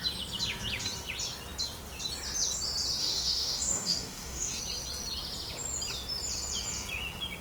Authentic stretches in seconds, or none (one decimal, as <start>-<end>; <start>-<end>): 0.0-3.0; 4.6-7.4